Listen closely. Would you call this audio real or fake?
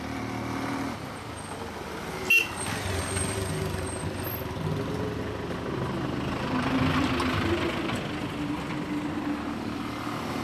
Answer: real